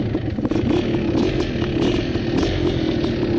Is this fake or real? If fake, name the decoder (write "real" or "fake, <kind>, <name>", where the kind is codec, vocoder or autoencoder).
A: real